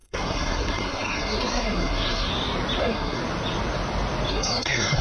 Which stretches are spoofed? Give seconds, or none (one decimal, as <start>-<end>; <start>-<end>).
0.0-2.3; 2.8-3.2; 4.3-5.0